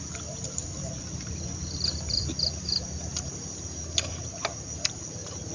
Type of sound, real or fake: real